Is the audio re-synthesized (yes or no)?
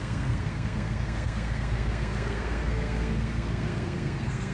yes